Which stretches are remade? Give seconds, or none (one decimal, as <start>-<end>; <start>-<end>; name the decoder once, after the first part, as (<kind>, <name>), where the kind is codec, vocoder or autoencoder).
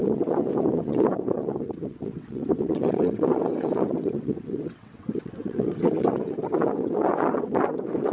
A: 0.0-8.1 (vocoder, WaveNeXt)